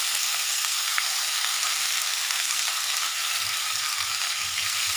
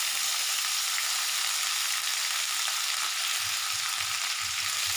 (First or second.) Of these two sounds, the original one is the second